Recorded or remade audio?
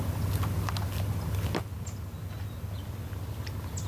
recorded